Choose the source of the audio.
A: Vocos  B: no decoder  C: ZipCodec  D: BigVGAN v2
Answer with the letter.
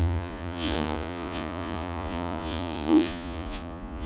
A